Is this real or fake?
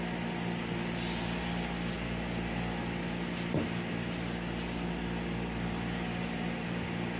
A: real